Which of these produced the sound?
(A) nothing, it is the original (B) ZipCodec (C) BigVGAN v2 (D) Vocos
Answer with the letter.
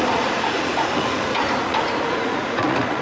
D